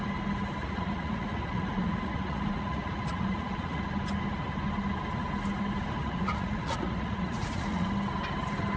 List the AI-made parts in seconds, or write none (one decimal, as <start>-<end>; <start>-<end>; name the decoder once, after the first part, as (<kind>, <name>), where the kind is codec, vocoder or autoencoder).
0.6-3.8 (vocoder, Vocos); 6.0-7.9